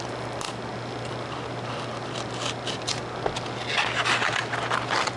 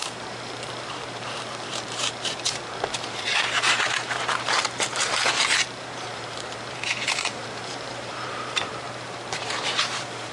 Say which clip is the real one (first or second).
first